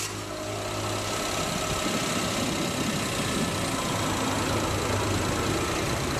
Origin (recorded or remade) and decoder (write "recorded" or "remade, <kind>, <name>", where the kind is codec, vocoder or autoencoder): recorded